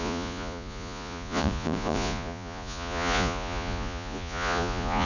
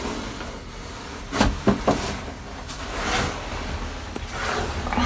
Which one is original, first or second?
second